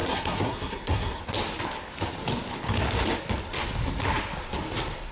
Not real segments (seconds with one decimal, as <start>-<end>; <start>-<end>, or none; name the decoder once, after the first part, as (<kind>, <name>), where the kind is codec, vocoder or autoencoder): 0.0-1.2 (codec, SNAC)

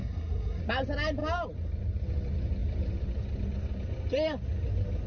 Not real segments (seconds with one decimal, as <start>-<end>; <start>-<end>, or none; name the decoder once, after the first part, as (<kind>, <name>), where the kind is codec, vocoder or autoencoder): 0.0-0.6 (codec, SNAC)

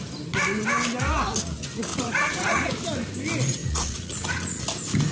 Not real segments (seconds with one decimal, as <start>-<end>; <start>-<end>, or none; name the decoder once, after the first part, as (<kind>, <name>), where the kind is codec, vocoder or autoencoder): 1.9-2.7 (vocoder, Vocos); 3.6-4.6